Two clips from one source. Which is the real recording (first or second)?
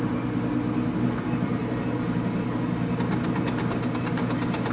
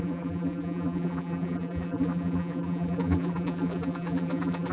first